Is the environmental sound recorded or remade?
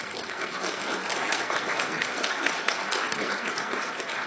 remade